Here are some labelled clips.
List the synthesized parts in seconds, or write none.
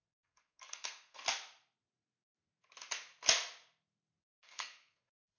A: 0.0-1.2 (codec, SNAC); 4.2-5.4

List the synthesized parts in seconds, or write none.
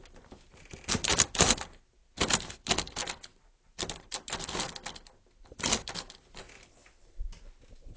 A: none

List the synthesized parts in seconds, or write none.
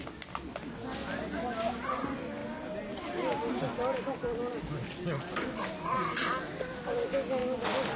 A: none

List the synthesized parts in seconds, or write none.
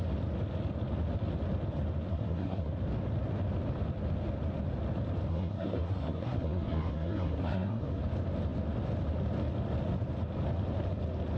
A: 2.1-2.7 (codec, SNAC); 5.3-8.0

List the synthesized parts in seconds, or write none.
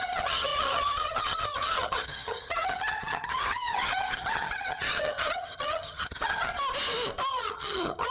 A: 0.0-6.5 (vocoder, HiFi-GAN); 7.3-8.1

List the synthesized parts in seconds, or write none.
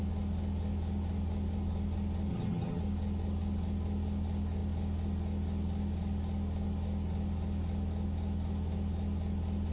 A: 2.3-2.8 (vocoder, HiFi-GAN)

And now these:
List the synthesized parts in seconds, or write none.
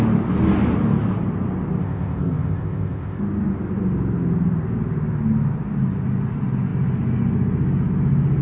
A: 1.8-3.2 (codec, ZipCodec)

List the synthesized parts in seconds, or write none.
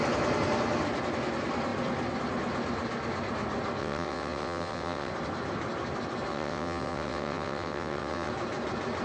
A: 3.8-5.1 (vocoder, WaveNeXt); 6.3-8.3